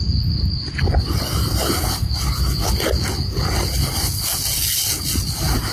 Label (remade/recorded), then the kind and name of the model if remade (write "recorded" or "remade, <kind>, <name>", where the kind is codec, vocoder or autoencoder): recorded